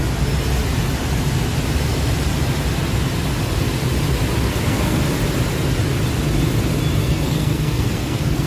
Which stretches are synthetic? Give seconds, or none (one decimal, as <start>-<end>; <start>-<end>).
4.5-5.0; 7.0-8.5